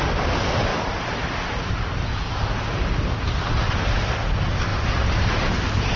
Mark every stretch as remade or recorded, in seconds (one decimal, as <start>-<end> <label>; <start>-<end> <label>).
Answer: 0.0-2.1 recorded; 2.1-3.3 remade; 3.3-4.7 recorded; 4.7-6.0 remade